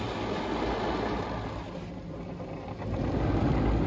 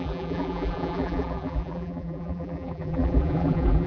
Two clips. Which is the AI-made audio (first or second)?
second